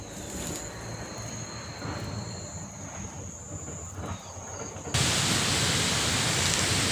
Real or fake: real